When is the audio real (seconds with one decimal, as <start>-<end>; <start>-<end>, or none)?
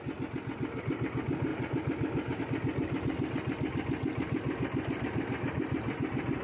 0.0-6.4